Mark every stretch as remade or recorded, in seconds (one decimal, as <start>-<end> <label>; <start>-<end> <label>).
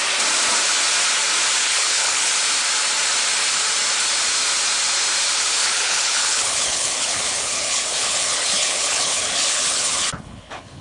0.0-1.6 recorded; 1.6-2.3 remade; 2.3-5.6 recorded; 5.6-10.8 remade